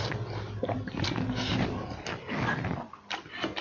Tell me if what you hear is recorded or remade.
recorded